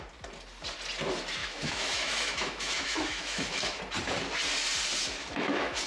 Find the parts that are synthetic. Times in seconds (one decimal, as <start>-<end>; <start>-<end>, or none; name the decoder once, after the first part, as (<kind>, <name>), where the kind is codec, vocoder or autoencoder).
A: 1.4-3.8 (autoencoder, DAC-VAE); 5.2-5.9